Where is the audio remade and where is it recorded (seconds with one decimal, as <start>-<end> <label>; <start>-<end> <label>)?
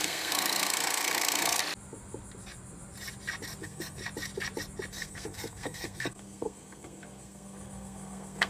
0.0-1.6 remade; 1.6-3.6 recorded; 3.6-4.0 remade; 4.0-4.9 recorded; 4.9-8.5 remade